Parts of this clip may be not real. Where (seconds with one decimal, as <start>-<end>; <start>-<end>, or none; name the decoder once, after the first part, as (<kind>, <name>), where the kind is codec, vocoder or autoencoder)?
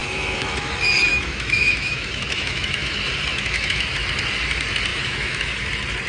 0.0-0.7 (autoencoder, DAC-VAE); 1.1-2.9; 3.3-3.9; 4.9-5.4